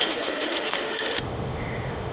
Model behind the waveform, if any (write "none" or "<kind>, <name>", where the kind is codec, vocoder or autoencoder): autoencoder, DAC-VAE